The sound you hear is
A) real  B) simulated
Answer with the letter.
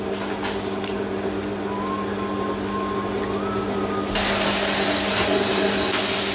A